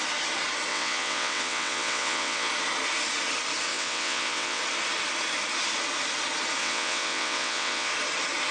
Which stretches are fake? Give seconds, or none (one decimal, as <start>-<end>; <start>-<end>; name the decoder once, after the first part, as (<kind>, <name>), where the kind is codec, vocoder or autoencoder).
0.7-2.5 (vocoder, WaveNeXt); 3.7-4.6; 6.6-7.9